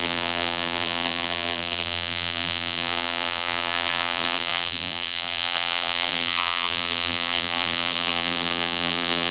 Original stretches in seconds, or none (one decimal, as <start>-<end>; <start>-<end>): none